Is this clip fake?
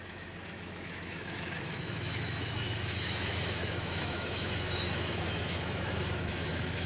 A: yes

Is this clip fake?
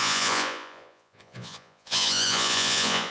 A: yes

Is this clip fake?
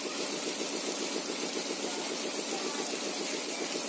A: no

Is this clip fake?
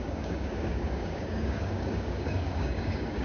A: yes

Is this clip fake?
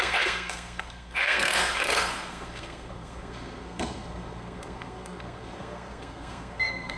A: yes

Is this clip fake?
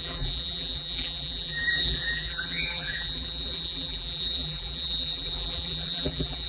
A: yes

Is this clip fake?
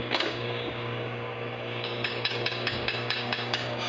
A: yes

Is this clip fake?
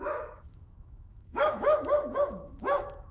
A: yes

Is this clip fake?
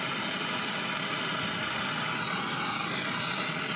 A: no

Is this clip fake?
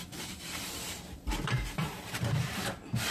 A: yes